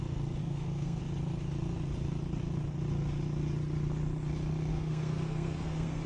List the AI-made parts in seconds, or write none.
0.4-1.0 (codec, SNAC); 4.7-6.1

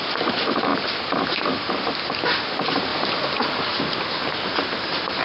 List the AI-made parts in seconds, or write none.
0.0-0.7 (vocoder, BigVGAN v2); 2.5-2.9; 3.6-5.2

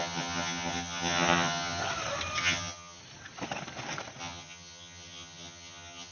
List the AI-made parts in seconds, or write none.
0.0-1.8 (vocoder, HiFi-GAN); 2.4-3.0; 4.2-6.1

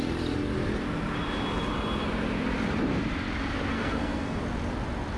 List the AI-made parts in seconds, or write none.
3.7-4.4 (codec, SNAC)

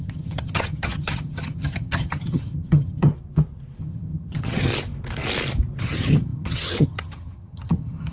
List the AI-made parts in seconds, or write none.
0.0-3.1 (vocoder, HiFi-GAN); 3.8-4.7; 5.8-8.1

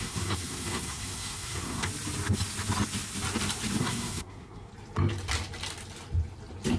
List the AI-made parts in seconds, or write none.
0.0-1.9 (codec, SNAC); 3.8-4.7